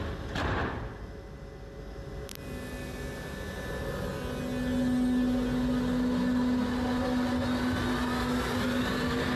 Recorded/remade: recorded